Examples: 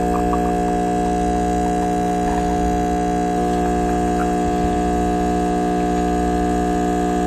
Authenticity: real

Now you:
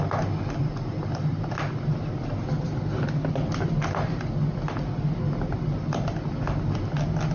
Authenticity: real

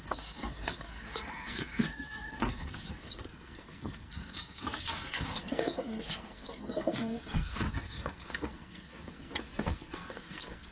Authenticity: fake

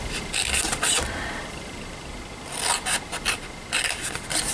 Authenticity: real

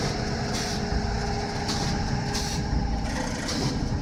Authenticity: real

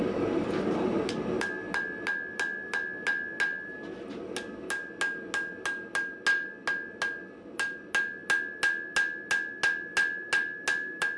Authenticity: real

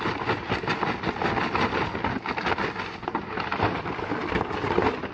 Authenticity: real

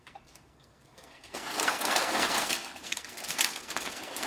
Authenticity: fake